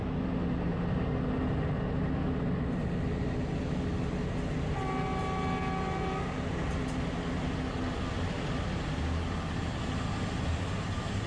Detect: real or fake real